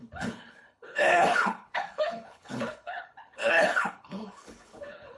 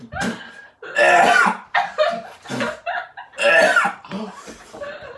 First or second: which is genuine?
second